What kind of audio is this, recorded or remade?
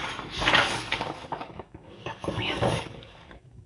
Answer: remade